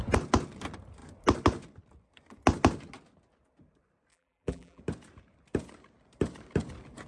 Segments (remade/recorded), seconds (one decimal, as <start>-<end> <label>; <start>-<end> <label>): 0.0-4.1 recorded; 4.1-4.8 remade; 4.8-7.1 recorded